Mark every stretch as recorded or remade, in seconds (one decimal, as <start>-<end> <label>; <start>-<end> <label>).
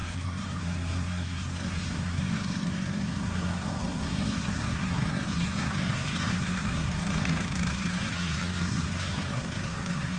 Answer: 0.0-10.2 remade